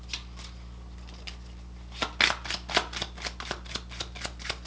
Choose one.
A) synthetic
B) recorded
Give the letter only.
B